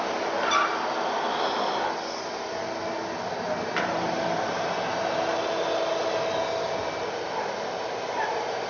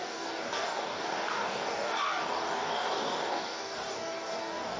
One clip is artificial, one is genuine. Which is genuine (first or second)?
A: first